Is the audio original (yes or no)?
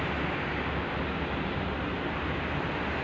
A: yes